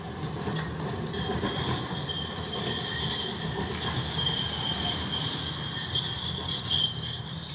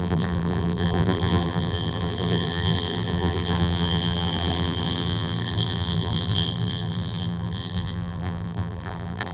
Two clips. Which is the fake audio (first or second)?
second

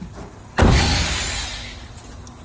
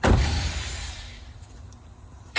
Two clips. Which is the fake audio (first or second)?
second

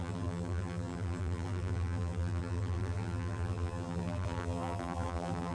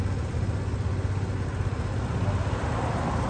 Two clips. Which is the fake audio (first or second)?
first